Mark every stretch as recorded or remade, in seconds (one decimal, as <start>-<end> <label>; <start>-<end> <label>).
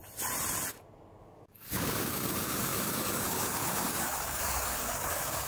0.0-1.2 recorded; 1.2-5.5 remade